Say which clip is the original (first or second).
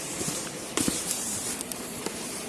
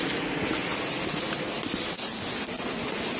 second